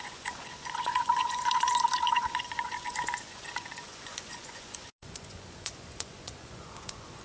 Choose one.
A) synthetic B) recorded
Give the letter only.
A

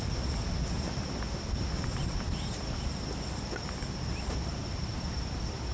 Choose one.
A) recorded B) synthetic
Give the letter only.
A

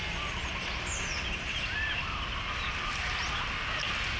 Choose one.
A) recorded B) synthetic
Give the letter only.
A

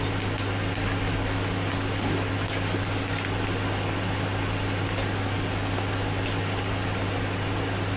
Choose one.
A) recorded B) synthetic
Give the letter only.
A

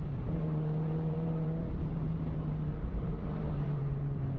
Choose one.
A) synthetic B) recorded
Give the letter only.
A